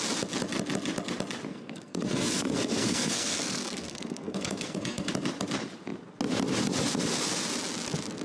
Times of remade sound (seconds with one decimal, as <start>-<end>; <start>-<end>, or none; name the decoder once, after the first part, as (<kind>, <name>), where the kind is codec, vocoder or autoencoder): 1.5-5.1 (codec, SNAC)